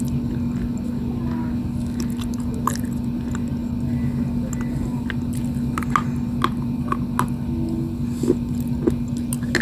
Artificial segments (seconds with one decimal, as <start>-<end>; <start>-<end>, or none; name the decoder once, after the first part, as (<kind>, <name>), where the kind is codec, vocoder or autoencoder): none